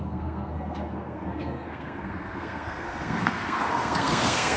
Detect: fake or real fake